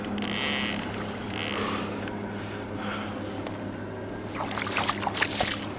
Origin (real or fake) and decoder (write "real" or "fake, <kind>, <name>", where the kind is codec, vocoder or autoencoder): real